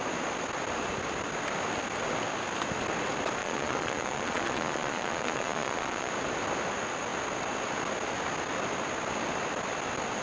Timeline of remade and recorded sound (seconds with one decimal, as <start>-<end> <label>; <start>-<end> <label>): 0.0-3.4 recorded; 3.4-6.1 remade; 6.1-10.2 recorded